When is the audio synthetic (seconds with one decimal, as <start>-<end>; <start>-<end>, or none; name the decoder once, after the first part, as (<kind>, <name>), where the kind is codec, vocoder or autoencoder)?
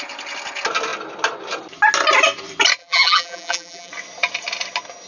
2.8-3.9 (vocoder, BigVGAN v2)